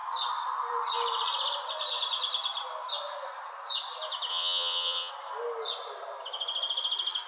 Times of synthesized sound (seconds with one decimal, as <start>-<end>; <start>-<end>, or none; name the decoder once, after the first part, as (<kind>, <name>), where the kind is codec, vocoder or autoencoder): 4.3-5.1 (vocoder, WaveNeXt)